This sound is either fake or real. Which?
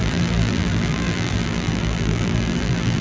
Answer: fake